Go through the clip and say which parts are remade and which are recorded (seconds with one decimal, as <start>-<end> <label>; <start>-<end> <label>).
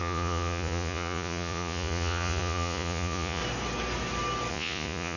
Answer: 0.0-3.4 remade; 3.4-4.5 recorded; 4.5-5.2 remade